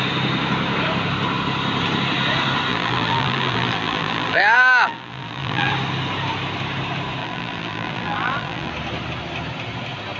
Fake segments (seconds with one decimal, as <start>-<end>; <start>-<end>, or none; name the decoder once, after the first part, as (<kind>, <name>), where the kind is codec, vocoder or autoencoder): 2.7-5.7 (vocoder, BigVGAN v2); 7.2-8.7